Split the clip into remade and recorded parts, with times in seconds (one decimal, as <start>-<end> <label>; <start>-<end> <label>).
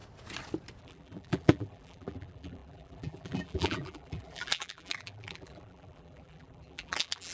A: 0.0-0.8 recorded; 0.8-7.3 remade